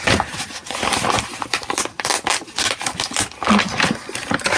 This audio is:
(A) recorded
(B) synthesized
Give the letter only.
A